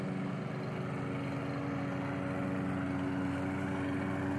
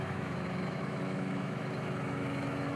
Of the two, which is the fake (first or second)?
second